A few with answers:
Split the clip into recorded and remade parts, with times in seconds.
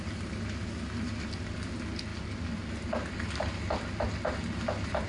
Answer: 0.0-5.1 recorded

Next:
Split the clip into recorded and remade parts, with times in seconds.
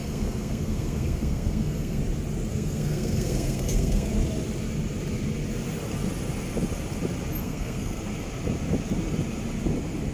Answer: 0.0-2.0 remade; 2.0-2.5 recorded; 2.5-4.1 remade; 4.1-7.4 recorded; 7.4-8.0 remade; 8.0-10.1 recorded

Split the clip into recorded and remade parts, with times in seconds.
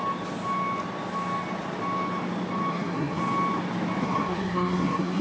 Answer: 0.0-2.7 recorded; 2.7-3.2 remade; 3.2-4.0 recorded; 4.0-5.2 remade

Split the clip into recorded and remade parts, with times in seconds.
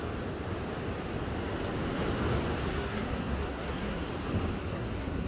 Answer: 0.0-2.7 recorded; 2.7-4.1 remade; 4.1-4.7 recorded; 4.7-5.3 remade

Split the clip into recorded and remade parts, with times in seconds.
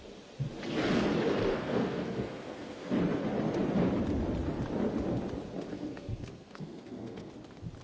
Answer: 0.0-1.5 recorded; 1.5-3.0 remade; 3.0-5.7 recorded; 5.7-7.3 remade; 7.3-7.8 recorded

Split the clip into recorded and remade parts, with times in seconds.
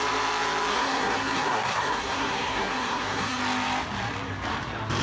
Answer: 0.0-0.7 recorded; 0.7-3.4 remade; 3.4-5.0 recorded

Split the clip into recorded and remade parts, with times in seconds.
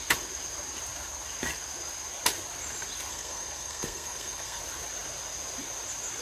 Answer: 0.0-3.1 recorded; 3.1-4.6 remade; 4.6-6.2 recorded